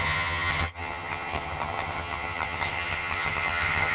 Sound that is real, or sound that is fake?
fake